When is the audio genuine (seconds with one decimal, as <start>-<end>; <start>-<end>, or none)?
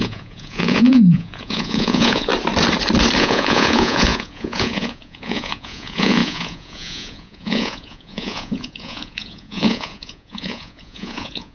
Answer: 2.3-3.2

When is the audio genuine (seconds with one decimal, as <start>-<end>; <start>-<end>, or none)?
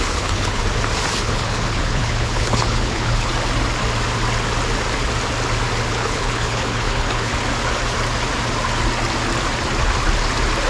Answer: 0.6-1.2; 3.3-5.9; 7.3-10.7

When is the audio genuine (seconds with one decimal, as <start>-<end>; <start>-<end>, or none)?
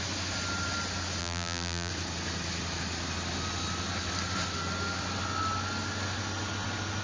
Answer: 0.0-1.2; 1.9-7.0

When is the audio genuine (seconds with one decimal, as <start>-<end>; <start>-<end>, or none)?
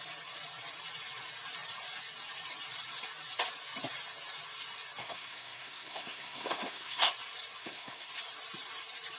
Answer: 0.0-5.0; 7.1-7.6; 8.1-9.2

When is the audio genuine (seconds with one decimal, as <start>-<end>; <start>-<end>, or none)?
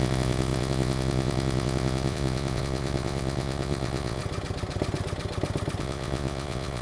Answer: 4.2-5.8